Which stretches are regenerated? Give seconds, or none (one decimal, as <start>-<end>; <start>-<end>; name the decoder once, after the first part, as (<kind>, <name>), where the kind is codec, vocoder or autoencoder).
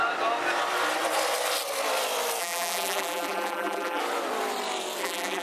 2.4-4.0 (vocoder, BigVGAN v2); 5.0-5.4